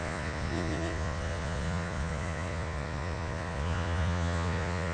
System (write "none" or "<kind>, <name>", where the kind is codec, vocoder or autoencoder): vocoder, Vocos